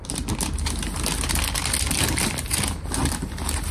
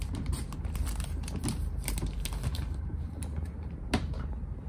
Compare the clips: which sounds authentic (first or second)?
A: first